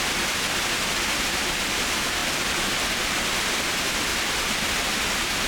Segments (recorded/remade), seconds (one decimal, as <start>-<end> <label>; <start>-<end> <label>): 0.0-5.5 recorded